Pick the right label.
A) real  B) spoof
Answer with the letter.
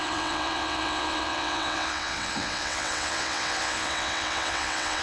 B